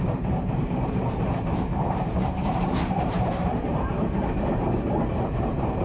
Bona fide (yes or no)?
no